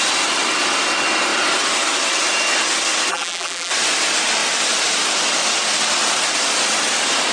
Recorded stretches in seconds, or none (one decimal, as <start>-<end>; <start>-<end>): 0.0-3.1; 3.7-7.3